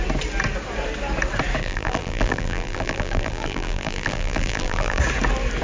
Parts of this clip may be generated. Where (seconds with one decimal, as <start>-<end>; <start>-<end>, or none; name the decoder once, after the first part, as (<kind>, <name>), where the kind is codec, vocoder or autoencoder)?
1.6-5.0 (vocoder, BigVGAN v2)

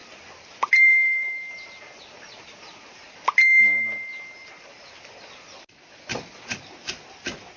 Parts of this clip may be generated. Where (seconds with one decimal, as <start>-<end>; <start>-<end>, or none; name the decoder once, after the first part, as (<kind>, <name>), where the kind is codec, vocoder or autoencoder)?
0.0-1.8 (vocoder, BigVGAN v2)

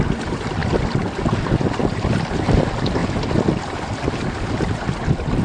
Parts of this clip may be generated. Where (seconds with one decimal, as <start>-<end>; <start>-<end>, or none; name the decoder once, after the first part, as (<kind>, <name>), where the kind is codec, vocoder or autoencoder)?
0.6-1.2 (vocoder, BigVGAN v2); 1.8-2.6

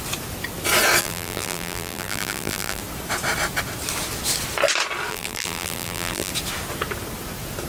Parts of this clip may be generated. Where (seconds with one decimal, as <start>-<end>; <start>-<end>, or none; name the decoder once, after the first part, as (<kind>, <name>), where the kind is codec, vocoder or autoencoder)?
1.0-2.8 (vocoder, BigVGAN v2); 5.1-6.3

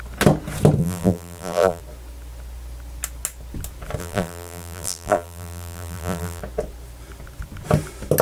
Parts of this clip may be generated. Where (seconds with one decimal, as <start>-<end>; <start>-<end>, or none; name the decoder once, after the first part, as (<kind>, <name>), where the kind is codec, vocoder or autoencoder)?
0.8-1.8 (vocoder, BigVGAN v2); 4.0-6.4